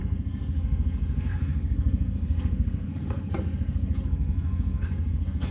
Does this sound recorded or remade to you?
remade